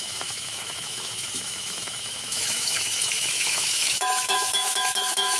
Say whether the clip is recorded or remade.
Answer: remade